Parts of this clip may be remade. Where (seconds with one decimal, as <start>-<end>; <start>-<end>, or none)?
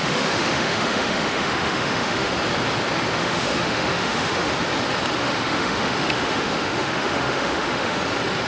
0.0-2.3; 3.2-4.5; 5.2-8.0